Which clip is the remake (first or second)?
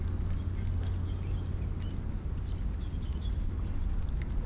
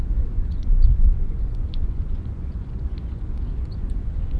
second